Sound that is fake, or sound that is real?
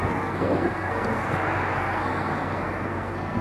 fake